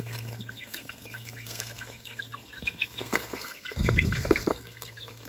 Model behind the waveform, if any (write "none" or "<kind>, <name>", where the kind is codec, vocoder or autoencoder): codec, SNAC